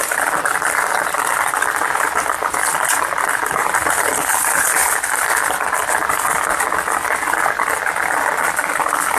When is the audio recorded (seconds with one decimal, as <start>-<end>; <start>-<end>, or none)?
0.0-3.6; 4.1-9.2